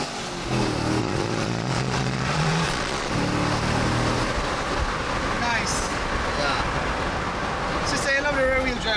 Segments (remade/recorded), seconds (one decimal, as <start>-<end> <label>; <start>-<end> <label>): 0.0-1.0 recorded; 1.0-3.1 remade; 3.1-9.0 recorded